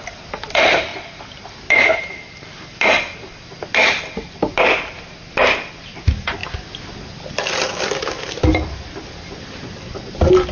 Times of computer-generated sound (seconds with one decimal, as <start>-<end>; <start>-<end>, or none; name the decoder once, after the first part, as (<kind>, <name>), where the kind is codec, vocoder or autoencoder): 0.0-0.9 (vocoder, BigVGAN v2); 4.5-6.4; 10.1-10.5